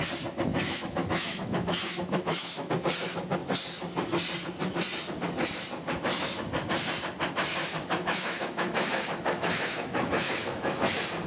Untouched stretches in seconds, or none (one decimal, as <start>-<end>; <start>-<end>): 0.0-0.5; 2.7-7.5; 10.9-11.3